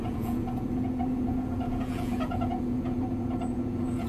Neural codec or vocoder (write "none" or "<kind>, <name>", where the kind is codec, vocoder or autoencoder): vocoder, Vocos